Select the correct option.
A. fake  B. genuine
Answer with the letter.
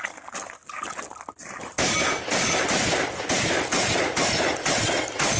B